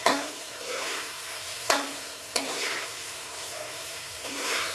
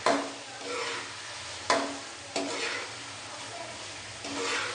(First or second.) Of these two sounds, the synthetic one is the first